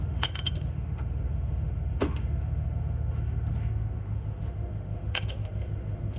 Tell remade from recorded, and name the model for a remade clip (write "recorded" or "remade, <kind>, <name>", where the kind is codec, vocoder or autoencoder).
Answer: remade, autoencoder, DAC-VAE